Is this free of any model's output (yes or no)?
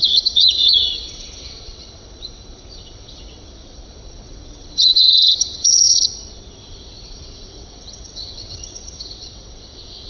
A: no